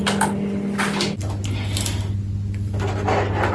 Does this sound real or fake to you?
real